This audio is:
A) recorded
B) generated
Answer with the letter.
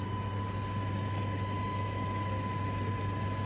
A